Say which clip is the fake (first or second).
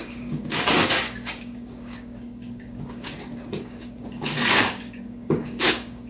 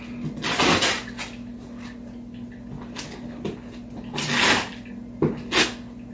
first